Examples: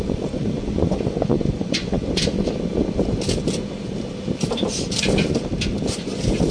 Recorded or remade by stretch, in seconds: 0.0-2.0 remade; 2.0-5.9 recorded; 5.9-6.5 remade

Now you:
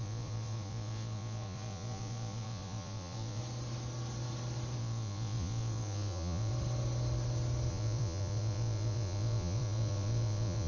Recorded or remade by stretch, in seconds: 0.0-3.4 remade; 3.4-4.8 recorded; 4.8-6.5 remade; 6.5-7.7 recorded; 7.7-10.7 remade

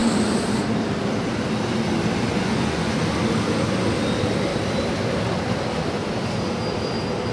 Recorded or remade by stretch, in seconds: 0.0-2.3 recorded; 2.3-3.0 remade; 3.0-7.3 recorded